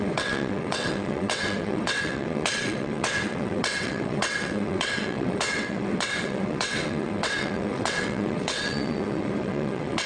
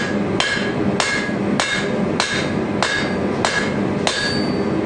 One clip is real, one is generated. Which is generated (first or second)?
first